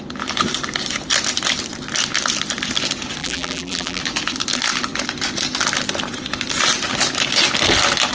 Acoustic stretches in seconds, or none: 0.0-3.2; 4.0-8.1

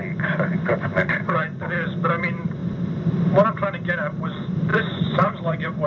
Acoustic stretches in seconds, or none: 0.0-4.7; 5.3-5.9

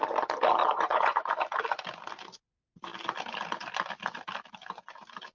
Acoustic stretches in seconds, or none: 0.0-0.6; 1.3-5.3

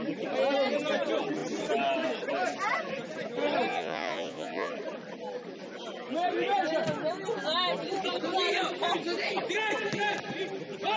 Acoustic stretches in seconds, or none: 0.0-3.7; 4.7-11.0